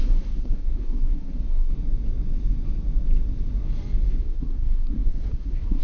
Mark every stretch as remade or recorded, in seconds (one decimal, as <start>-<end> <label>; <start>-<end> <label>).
0.0-1.7 remade; 1.7-4.2 recorded; 4.2-5.8 remade